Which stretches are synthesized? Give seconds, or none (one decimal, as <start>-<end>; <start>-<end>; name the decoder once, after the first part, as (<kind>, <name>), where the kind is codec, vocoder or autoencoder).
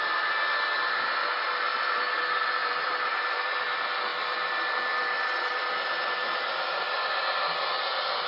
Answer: 1.7-2.2 (vocoder, BigVGAN v2); 2.6-3.6; 4.1-5.7